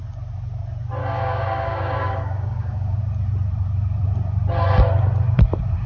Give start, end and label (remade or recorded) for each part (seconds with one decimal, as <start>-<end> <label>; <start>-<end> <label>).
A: 0.0-1.0 recorded; 1.0-3.0 remade; 3.0-5.9 recorded